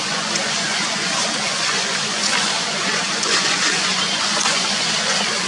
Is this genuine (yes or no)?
no